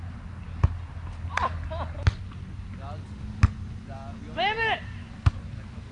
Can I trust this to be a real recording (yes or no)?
yes